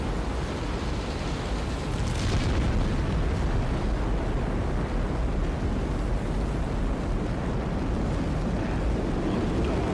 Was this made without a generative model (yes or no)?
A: yes